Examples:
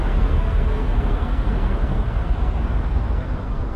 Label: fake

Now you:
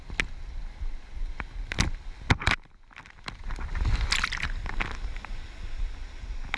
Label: real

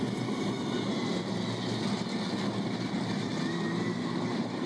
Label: real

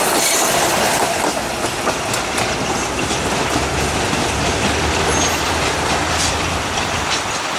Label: real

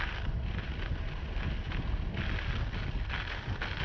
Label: real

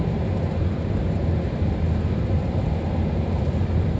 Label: real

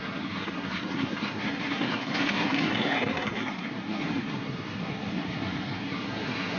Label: fake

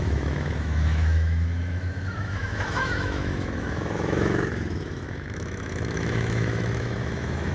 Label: fake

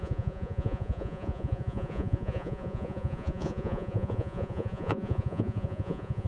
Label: fake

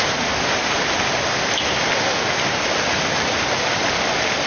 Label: real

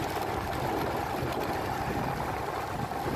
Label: real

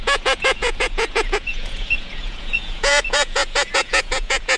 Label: fake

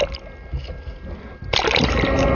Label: real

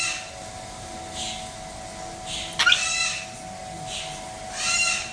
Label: real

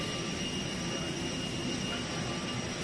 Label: real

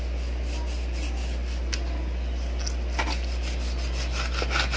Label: real